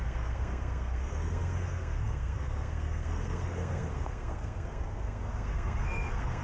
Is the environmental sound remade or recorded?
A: remade